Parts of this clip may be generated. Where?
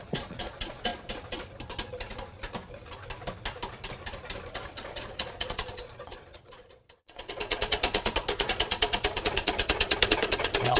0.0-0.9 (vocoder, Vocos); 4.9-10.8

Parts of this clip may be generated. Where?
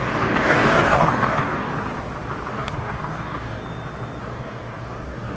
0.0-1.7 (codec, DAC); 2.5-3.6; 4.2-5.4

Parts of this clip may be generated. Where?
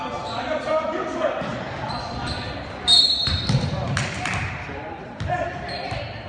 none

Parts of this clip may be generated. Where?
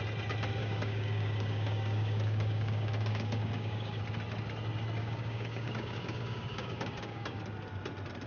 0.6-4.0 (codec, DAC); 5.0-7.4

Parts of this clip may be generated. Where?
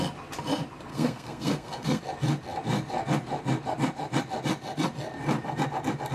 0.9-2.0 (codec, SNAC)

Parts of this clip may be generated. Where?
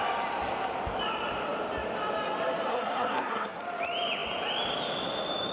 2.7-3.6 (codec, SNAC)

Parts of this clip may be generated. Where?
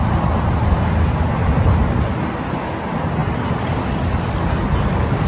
none